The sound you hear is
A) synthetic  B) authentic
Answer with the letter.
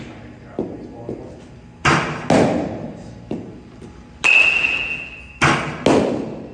B